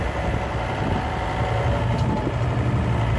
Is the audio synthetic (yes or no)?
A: no